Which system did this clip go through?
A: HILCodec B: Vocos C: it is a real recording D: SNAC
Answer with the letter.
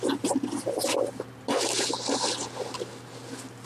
C